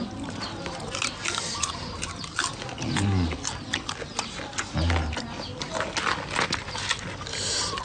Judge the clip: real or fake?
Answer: real